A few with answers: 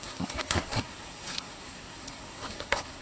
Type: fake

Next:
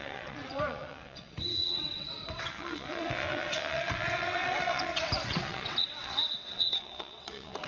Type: fake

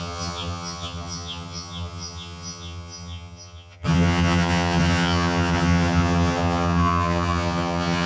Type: fake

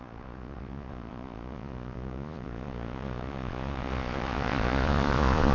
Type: fake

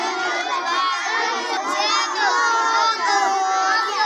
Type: real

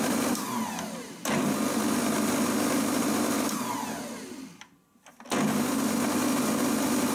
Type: real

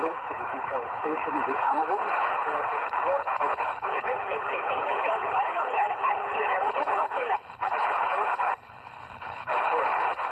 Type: fake